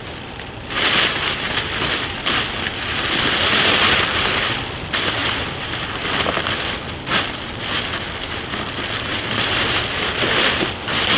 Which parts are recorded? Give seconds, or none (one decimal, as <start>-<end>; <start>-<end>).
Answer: 0.0-11.2